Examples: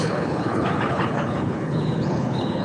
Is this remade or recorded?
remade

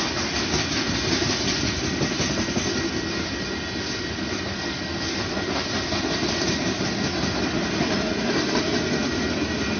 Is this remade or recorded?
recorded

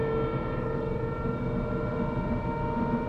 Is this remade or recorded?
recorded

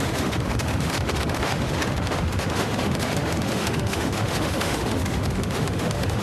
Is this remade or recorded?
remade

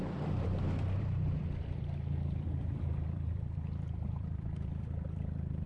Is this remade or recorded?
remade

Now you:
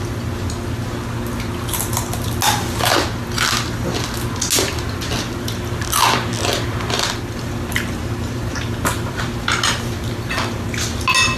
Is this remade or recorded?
recorded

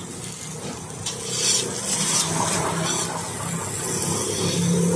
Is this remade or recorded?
recorded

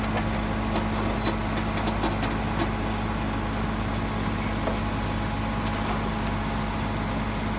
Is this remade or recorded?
recorded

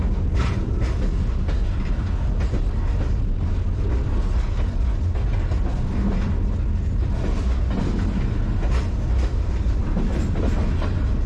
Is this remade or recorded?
recorded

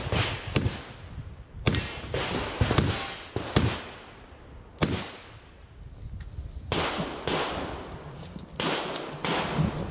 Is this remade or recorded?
recorded